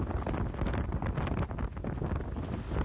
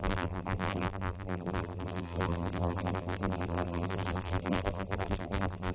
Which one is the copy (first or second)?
second